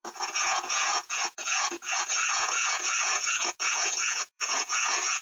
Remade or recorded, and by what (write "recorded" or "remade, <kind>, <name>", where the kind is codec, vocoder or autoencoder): remade, vocoder, Vocos